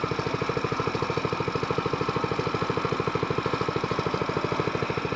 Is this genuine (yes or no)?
yes